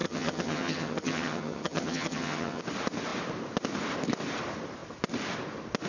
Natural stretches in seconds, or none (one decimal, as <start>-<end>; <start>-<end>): 2.6-5.9

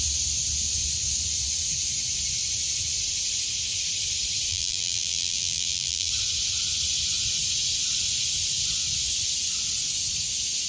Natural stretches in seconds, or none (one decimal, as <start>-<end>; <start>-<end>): 0.0-4.5; 6.1-10.7

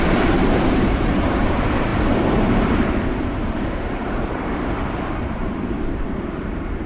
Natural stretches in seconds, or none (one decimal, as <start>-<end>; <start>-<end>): none

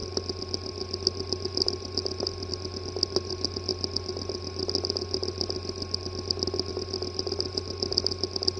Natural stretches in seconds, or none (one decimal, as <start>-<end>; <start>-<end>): 0.0-8.6

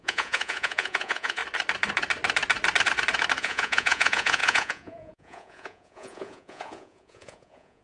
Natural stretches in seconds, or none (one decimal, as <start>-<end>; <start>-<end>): 1.4-3.4

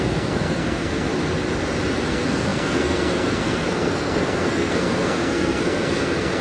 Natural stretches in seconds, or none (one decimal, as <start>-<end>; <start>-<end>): 1.1-2.1